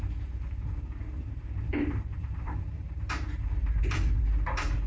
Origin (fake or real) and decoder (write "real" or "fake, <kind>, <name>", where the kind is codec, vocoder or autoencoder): fake, vocoder, BigVGAN v2